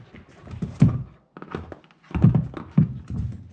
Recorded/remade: recorded